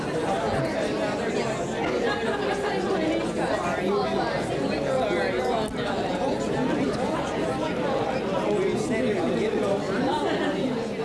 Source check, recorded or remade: recorded